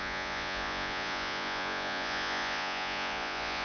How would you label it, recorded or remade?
remade